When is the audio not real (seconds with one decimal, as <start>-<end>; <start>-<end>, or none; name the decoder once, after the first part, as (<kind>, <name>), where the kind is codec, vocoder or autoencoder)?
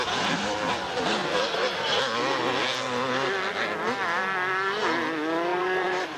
1.2-2.0 (vocoder, BigVGAN v2); 5.5-6.2